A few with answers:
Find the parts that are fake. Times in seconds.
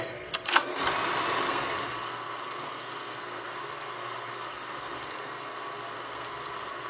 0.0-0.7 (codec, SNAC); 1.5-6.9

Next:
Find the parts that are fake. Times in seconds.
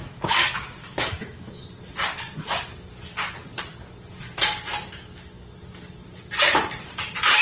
0.8-1.6 (autoencoder, DAC-VAE)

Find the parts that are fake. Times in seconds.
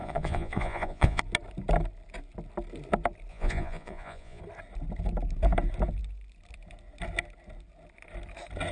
0.0-1.2 (vocoder, Vocos); 3.3-4.4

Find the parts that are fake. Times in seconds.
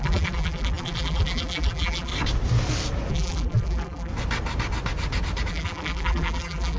0.0-2.1 (vocoder, BigVGAN v2); 3.1-4.1; 5.5-6.8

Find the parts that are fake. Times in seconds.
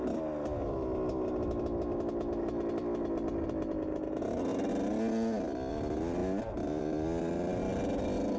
none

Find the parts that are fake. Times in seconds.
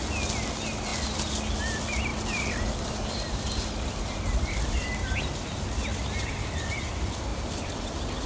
2.1-5.0 (vocoder, BigVGAN v2); 5.9-6.8; 7.3-8.3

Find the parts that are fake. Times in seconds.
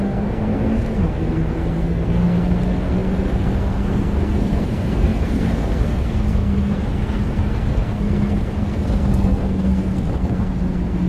0.0-11.1 (codec, SNAC)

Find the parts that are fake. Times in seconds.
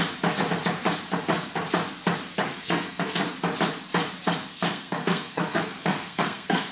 2.5-3.2 (codec, SNAC); 4.5-6.7